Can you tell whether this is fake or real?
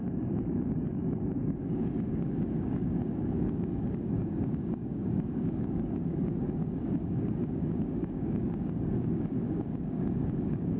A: fake